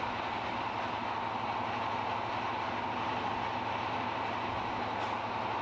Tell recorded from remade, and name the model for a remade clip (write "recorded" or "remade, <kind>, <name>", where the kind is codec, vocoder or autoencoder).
recorded